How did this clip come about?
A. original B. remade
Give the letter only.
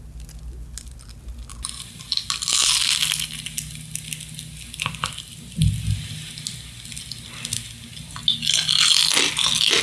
A